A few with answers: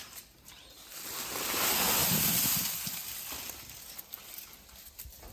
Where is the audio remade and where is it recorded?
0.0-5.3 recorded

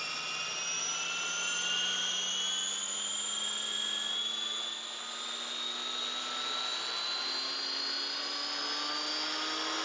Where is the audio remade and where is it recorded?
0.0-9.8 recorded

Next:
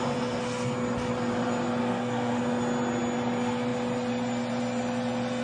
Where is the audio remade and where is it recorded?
0.0-1.8 recorded; 1.8-2.4 remade; 2.4-5.4 recorded

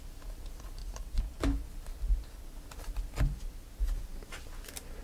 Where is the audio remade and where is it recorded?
0.0-0.8 recorded; 0.8-1.4 remade; 1.4-5.0 recorded

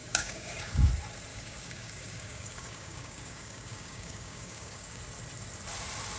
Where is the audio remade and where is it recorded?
0.0-0.9 remade; 0.9-1.3 recorded; 1.3-5.0 remade; 5.0-6.2 recorded

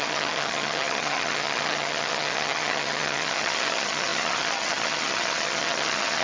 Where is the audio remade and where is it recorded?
0.0-6.2 remade

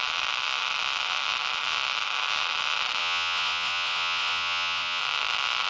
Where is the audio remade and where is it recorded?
0.0-3.0 recorded; 3.0-5.0 remade; 5.0-5.7 recorded

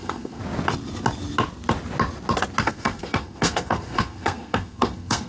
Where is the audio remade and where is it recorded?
0.0-0.4 remade; 0.4-2.6 recorded; 2.6-5.3 remade